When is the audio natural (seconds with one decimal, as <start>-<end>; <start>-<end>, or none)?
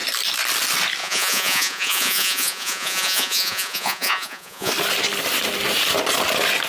0.0-1.0; 4.7-6.7